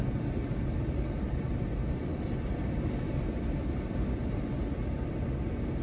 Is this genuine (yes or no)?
yes